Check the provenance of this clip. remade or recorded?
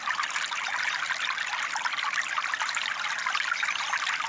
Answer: recorded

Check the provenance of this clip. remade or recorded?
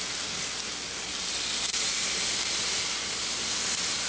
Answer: recorded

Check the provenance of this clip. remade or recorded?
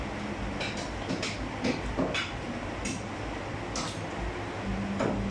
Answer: recorded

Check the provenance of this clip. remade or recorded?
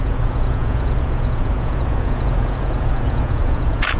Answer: remade